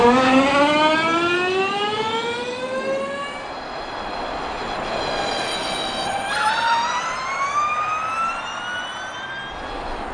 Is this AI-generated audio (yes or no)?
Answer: no